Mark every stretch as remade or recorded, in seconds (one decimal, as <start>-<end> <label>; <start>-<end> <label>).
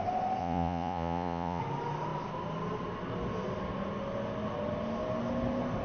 0.0-0.4 recorded; 0.4-1.6 remade; 1.6-5.8 recorded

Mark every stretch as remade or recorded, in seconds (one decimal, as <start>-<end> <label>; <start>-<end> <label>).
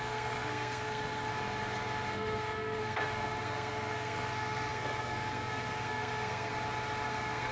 0.0-1.3 remade; 1.3-2.1 recorded; 2.1-6.5 remade; 6.5-7.1 recorded; 7.1-7.5 remade